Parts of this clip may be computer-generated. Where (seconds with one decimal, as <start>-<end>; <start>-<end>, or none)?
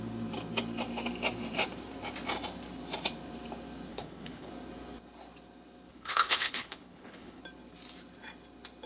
3.9-4.5; 5.9-7.4